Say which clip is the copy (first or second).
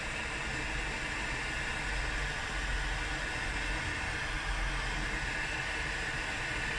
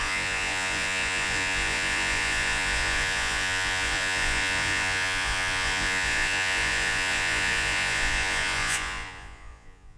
second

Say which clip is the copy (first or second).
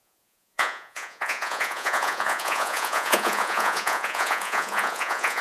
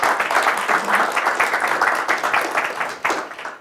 first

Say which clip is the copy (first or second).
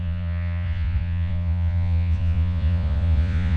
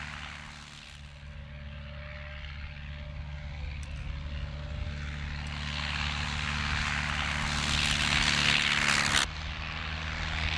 first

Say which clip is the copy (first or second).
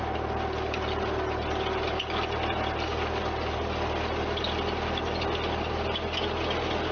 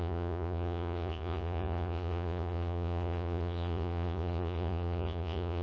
second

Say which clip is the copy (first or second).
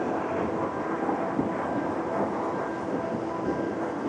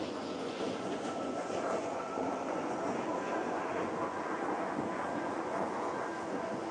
second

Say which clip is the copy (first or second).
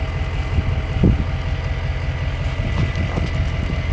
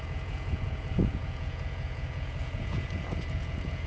second